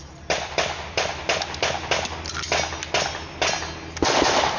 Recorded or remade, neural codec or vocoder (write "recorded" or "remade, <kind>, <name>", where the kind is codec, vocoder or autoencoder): recorded